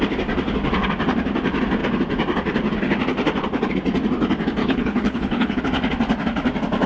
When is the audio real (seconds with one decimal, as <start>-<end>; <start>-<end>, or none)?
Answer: 0.0-4.6; 5.6-6.9